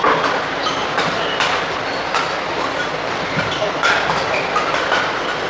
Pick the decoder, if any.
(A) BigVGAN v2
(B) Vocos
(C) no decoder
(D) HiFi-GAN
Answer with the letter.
C